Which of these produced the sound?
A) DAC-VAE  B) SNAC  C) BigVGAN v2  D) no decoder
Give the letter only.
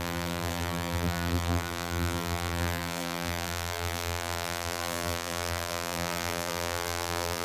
C